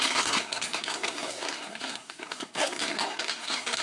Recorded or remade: remade